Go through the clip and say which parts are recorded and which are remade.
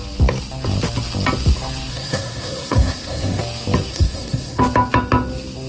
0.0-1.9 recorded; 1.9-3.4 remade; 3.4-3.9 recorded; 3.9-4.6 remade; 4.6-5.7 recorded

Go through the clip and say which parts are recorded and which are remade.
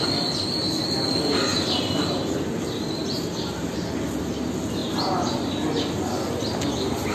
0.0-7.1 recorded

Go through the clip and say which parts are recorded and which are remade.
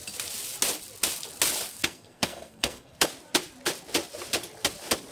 0.0-1.7 recorded; 1.7-3.1 remade; 3.1-5.1 recorded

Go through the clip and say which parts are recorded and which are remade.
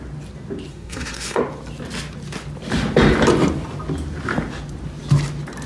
0.0-0.7 recorded; 0.7-1.4 remade; 1.4-5.7 recorded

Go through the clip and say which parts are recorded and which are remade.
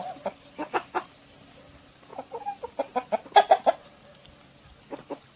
0.0-5.4 recorded